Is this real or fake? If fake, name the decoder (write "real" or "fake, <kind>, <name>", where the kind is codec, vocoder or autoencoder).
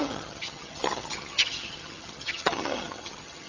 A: fake, vocoder, HiFi-GAN